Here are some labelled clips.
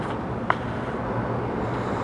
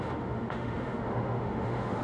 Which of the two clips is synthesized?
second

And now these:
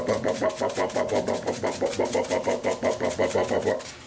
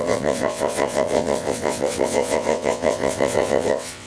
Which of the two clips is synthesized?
second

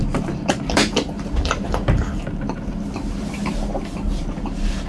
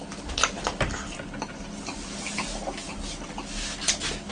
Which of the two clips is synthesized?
first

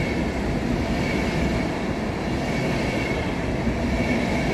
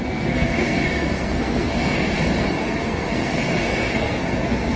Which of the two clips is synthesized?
second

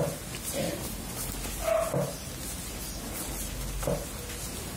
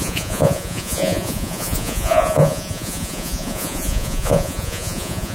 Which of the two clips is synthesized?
second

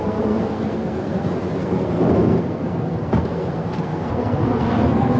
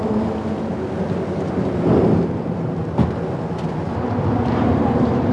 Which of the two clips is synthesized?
first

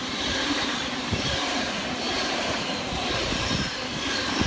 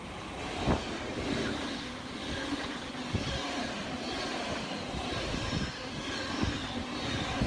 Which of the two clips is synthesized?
first